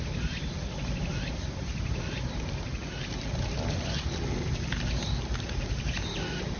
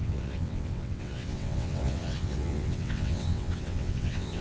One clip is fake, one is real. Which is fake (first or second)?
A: second